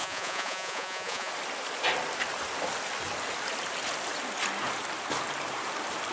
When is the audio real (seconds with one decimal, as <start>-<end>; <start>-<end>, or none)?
1.3-6.1